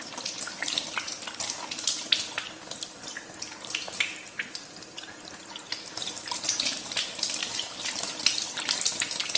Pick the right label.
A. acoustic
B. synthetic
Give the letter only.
A